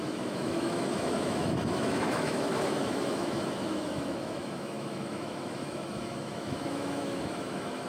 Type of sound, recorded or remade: remade